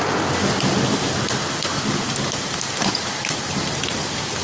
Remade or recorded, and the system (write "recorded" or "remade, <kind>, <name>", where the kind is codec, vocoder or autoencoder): recorded